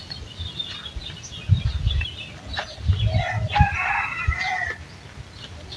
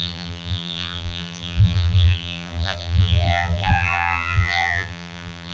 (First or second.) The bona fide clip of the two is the first